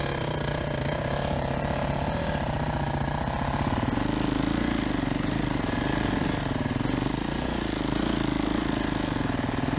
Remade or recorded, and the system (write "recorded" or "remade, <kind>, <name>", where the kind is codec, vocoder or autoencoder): recorded